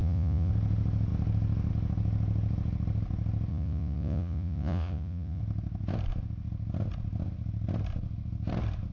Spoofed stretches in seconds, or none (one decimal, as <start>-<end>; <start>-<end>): 0.0-0.5; 3.5-5.4